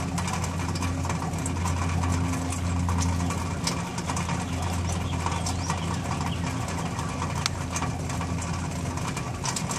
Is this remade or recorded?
recorded